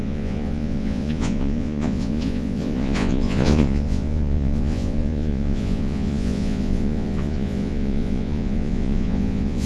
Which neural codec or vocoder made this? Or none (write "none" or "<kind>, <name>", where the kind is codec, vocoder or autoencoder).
vocoder, Vocos